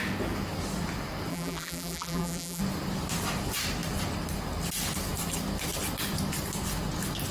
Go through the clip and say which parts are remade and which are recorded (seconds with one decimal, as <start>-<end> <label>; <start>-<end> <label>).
0.0-1.3 recorded; 1.3-2.6 remade; 2.6-7.3 recorded